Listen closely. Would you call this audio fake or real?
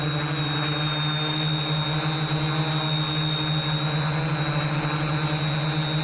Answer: real